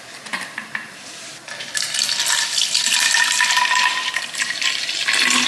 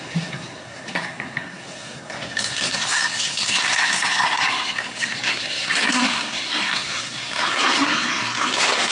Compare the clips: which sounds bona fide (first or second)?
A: first